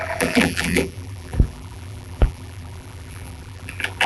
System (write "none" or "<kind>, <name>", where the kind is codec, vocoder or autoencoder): vocoder, BigVGAN v2